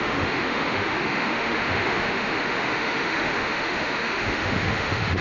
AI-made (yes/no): yes